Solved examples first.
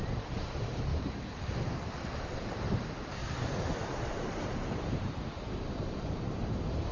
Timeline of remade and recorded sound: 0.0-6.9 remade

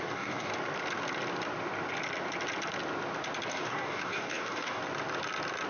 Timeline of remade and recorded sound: 0.0-0.5 remade; 0.5-3.5 recorded; 3.5-4.8 remade; 4.8-5.7 recorded